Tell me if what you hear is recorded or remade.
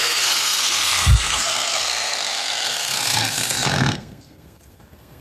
remade